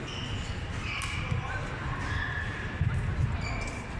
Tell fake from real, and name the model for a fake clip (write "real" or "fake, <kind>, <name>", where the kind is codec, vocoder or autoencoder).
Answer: real